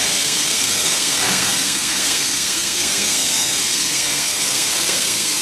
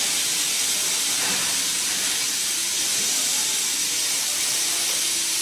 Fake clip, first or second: first